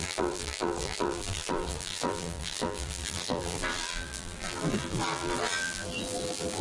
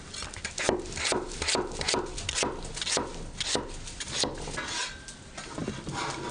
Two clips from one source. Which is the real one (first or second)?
second